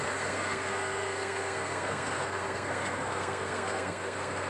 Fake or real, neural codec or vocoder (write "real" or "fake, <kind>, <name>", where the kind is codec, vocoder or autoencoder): fake, codec, SNAC